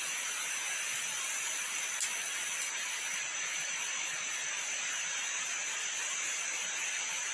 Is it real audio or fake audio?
real